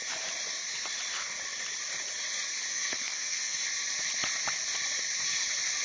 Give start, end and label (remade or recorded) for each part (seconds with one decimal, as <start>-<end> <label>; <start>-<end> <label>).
0.0-2.7 recorded; 2.7-3.6 remade; 3.6-5.8 recorded